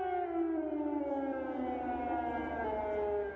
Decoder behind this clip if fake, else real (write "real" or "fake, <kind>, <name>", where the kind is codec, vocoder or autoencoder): real